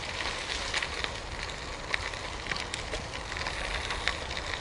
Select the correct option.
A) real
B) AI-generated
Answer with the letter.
A